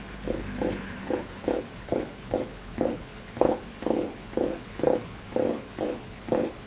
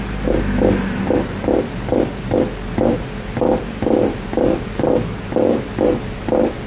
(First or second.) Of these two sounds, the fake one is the first